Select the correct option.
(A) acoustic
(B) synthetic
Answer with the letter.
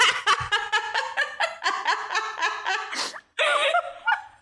A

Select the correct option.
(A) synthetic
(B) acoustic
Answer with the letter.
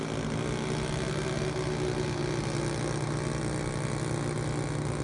B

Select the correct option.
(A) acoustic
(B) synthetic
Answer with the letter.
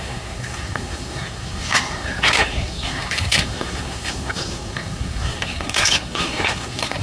B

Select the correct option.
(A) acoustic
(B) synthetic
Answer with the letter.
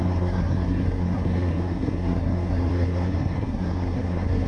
B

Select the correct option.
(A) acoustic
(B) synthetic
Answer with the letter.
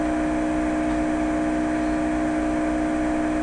A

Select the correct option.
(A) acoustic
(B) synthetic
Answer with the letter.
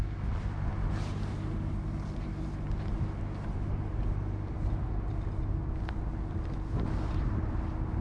A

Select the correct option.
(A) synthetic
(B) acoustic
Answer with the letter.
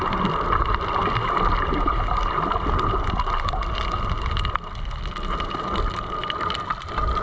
B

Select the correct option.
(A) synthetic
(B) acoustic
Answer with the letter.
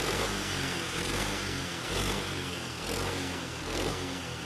A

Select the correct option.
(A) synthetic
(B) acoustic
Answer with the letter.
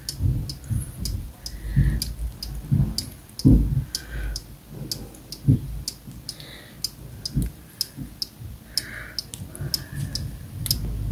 B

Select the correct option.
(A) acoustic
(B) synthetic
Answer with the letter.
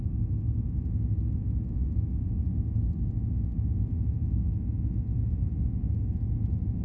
A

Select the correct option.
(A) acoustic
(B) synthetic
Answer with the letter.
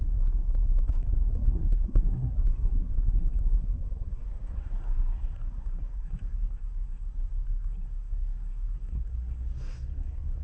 B